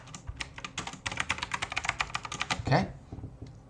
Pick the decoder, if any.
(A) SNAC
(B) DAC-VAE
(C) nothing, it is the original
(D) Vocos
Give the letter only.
C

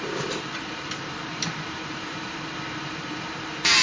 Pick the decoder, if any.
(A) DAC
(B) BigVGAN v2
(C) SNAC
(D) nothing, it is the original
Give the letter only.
B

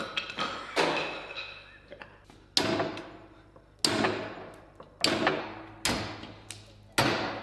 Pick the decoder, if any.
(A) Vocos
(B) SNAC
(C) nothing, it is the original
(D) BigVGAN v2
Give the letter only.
C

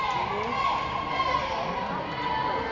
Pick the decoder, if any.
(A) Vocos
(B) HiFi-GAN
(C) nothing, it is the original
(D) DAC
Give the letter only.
C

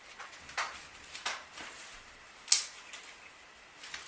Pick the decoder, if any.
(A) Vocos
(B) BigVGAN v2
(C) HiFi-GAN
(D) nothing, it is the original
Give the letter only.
D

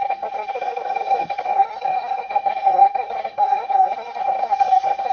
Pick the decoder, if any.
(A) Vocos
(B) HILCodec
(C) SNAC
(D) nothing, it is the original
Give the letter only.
C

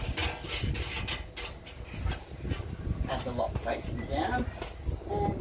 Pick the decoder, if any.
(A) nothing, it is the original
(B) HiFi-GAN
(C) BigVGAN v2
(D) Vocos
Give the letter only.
A